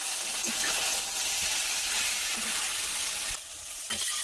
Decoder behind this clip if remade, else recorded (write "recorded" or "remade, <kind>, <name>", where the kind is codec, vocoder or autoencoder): recorded